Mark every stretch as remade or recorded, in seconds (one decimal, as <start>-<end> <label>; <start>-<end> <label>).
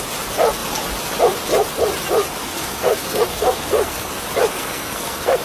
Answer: 0.0-2.4 recorded; 2.4-4.1 remade; 4.1-4.5 recorded; 4.5-5.4 remade